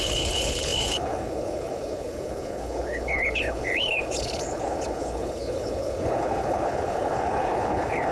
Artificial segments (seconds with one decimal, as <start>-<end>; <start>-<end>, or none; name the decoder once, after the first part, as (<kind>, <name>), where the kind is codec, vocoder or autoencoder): 0.0-8.1 (codec, HILCodec)